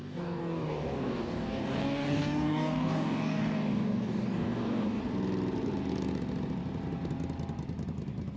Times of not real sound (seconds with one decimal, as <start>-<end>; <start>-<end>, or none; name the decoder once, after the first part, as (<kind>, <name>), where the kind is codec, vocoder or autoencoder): 0.0-5.0 (codec, DAC)